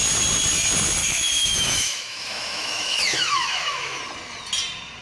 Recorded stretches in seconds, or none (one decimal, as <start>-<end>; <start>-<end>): 0.0-1.0; 4.0-5.0